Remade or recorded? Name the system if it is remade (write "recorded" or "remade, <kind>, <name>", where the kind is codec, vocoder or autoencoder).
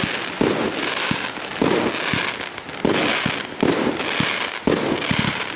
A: recorded